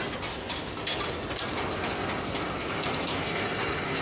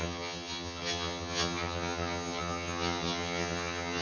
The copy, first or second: second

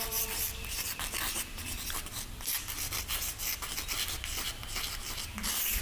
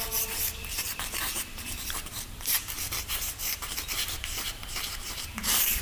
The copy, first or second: second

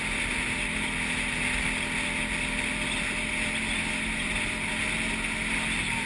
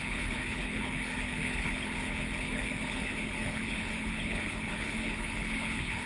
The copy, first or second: second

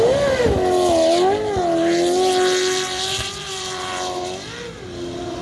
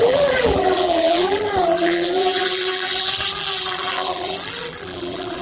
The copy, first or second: second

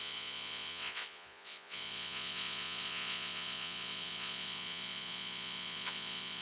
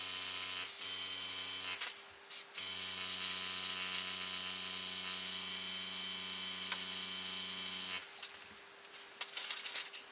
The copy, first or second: first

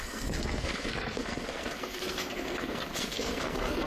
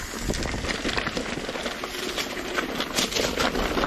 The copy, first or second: first